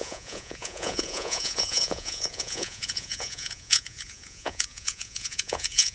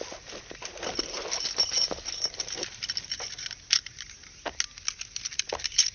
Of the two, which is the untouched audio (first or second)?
second